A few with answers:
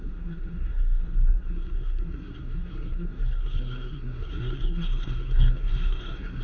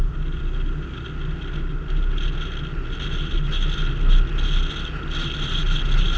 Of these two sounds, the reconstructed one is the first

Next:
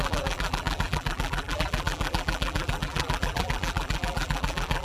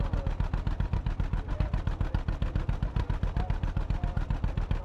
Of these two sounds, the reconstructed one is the first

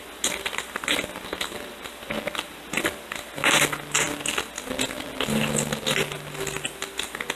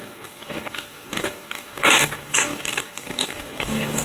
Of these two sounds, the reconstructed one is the second